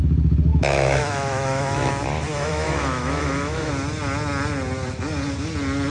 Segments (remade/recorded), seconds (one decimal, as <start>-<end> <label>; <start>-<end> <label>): 0.0-0.5 recorded; 0.5-1.9 remade; 1.9-2.3 recorded; 2.3-3.7 remade; 3.7-5.9 recorded